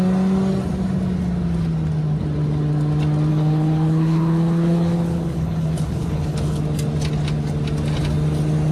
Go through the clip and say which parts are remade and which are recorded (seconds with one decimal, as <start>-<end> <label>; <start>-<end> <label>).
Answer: 0.0-3.3 recorded; 3.3-6.6 remade; 6.6-8.7 recorded